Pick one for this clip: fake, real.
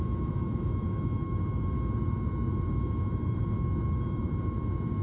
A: fake